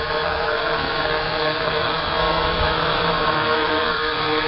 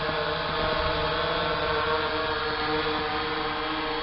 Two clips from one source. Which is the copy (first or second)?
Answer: first